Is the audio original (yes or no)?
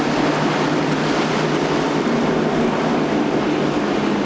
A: yes